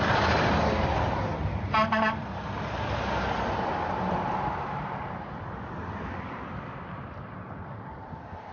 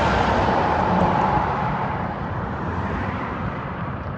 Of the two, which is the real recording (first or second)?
first